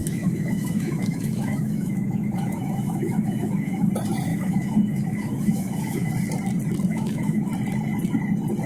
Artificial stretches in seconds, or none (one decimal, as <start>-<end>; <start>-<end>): 0.0-3.9; 4.3-6.1; 6.9-7.5